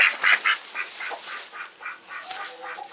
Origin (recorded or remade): recorded